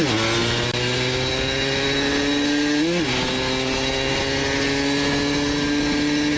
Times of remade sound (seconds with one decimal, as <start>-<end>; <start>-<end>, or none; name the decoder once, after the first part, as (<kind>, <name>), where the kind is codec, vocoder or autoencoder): none

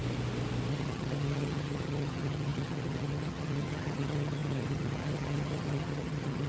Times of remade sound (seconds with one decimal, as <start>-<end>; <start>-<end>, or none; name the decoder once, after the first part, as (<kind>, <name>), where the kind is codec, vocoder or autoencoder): 0.7-6.5 (vocoder, HiFi-GAN)

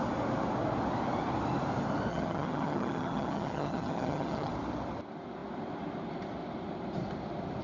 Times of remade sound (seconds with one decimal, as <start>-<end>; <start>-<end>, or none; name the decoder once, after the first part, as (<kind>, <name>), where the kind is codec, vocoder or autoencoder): 2.1-4.5 (vocoder, HiFi-GAN)

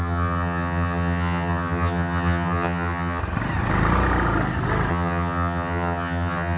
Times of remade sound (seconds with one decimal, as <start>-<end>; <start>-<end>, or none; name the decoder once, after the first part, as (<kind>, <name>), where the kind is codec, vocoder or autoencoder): 0.0-3.2 (vocoder, HiFi-GAN); 4.9-6.6